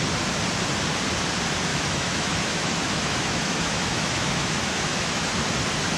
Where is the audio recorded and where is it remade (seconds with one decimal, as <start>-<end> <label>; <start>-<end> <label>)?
0.0-1.7 recorded; 1.7-5.3 remade; 5.3-6.0 recorded